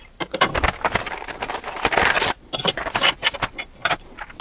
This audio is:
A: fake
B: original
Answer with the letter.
B